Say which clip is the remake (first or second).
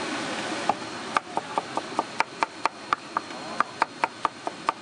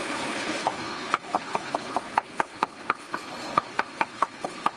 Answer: second